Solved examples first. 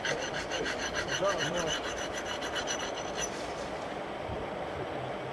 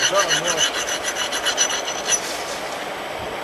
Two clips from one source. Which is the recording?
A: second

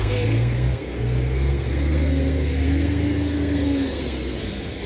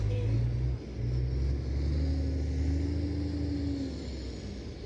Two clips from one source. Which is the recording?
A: second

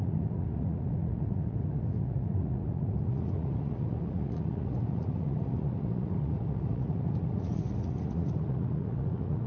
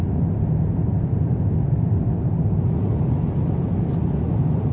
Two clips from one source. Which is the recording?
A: second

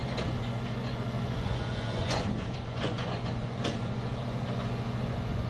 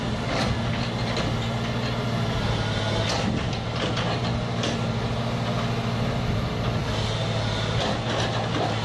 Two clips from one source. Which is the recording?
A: second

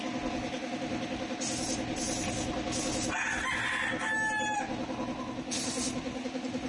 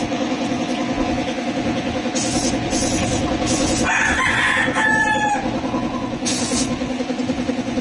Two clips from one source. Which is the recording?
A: first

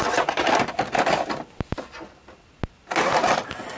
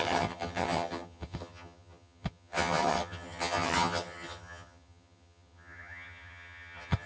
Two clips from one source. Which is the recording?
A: first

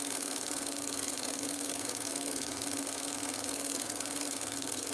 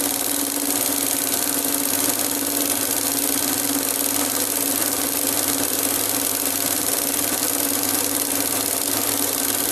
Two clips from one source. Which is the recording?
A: second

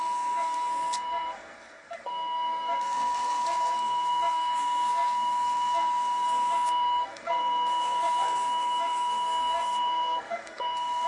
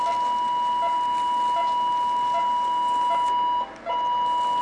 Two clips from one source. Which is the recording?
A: second